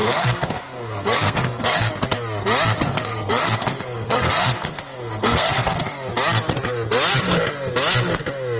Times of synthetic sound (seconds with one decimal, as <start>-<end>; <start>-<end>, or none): 0.0-1.9; 2.9-5.8